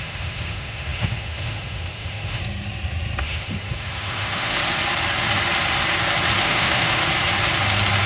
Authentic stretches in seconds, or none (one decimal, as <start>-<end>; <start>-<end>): 2.4-3.2; 4.6-6.4; 7.0-8.1